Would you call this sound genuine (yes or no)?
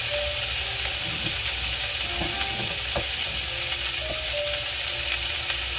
yes